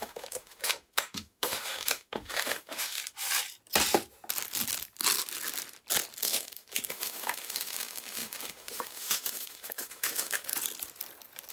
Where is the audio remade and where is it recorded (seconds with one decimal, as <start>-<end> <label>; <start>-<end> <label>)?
0.0-3.0 remade; 3.0-6.2 recorded; 6.2-10.5 remade; 10.5-11.5 recorded